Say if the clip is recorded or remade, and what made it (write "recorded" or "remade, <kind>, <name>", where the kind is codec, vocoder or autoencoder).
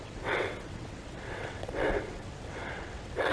remade, vocoder, WaveNeXt